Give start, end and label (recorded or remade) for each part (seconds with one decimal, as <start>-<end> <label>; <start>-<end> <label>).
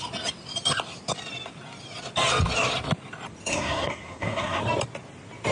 0.0-3.5 recorded; 3.5-4.6 remade; 4.6-5.5 recorded